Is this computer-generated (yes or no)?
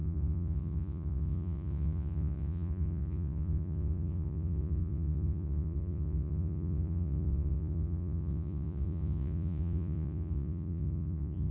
yes